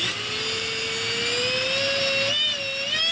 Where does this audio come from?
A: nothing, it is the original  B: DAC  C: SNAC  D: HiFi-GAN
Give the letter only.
A